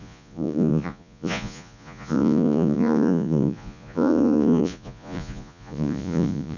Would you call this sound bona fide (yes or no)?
no